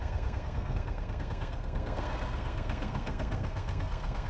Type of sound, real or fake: fake